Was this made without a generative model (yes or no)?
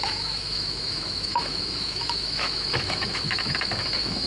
no